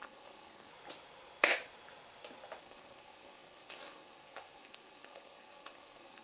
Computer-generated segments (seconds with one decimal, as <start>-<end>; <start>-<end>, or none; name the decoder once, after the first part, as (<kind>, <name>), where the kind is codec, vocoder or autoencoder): 0.0-0.7 (codec, SNAC); 2.6-6.2